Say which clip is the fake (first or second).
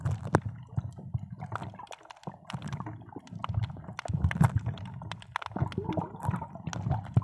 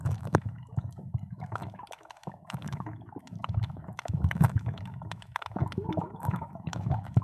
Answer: second